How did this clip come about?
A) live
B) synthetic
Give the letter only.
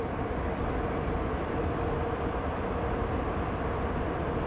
B